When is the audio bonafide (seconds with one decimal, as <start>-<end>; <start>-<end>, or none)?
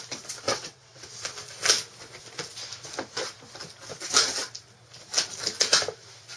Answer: 0.0-0.5; 1.1-6.4